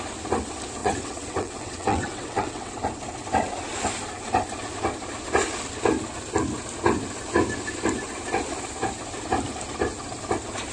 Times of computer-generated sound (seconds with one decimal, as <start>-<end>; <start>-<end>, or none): 0.8-2.7